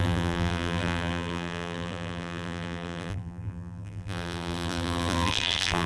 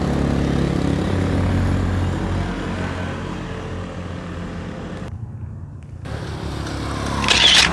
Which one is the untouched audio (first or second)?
second